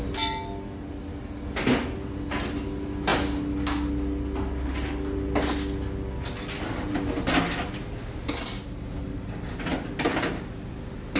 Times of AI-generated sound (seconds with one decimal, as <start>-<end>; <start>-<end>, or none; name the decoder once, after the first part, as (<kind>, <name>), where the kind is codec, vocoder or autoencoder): none